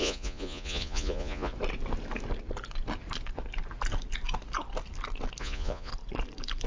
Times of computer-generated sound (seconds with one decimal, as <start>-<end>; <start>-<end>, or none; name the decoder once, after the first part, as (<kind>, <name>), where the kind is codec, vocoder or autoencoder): 0.0-1.5 (vocoder, Vocos); 5.4-5.9